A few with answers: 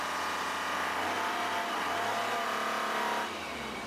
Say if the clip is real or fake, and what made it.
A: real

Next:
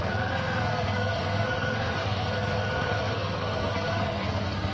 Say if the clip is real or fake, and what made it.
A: fake, codec, SNAC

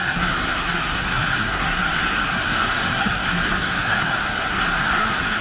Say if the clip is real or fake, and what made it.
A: fake, codec, SNAC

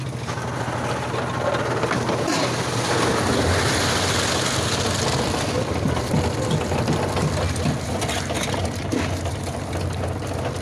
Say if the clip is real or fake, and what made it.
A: real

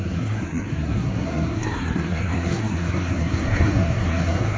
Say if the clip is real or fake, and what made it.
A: fake, codec, SNAC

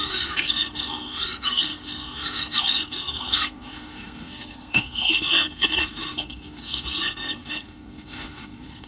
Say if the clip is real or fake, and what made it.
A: fake, codec, SNAC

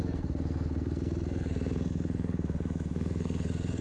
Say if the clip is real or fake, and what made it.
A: fake, codec, SNAC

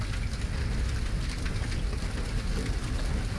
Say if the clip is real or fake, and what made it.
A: real